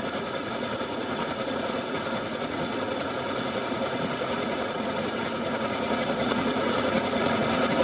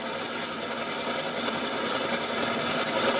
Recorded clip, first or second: second